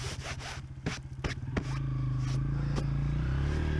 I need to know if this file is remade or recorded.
recorded